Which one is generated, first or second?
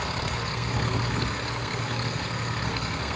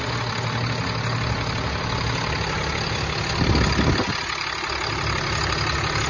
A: first